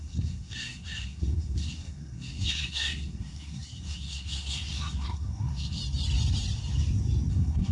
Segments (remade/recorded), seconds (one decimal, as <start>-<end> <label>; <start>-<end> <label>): 0.0-5.8 remade; 5.8-7.3 recorded; 7.3-7.7 remade